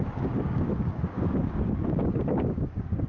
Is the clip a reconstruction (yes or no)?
yes